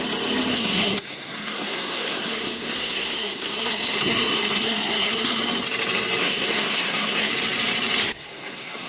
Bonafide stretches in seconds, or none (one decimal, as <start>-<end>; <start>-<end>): 0.0-0.5; 5.4-6.2; 7.3-8.0